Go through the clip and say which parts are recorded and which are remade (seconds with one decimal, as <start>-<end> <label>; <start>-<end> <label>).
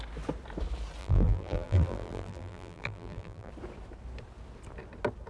0.0-1.0 recorded; 1.0-3.5 remade; 3.5-5.3 recorded